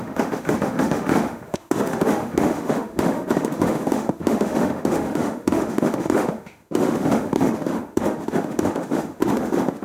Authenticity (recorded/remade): remade